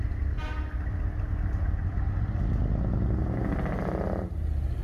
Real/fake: real